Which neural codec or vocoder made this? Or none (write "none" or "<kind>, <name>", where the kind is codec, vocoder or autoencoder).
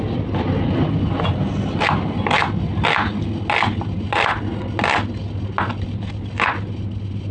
none